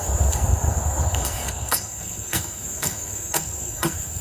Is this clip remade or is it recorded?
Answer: remade